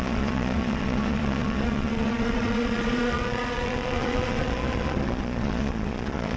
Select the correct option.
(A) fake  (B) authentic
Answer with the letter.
A